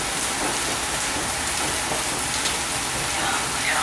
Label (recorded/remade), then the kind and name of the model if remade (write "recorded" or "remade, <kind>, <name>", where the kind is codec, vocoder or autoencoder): recorded